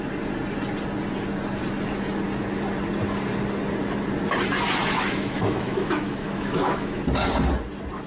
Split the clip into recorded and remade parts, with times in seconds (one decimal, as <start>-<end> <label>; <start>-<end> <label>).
0.0-4.8 recorded; 4.8-7.0 remade; 7.0-8.1 recorded